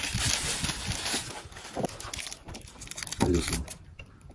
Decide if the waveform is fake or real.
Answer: real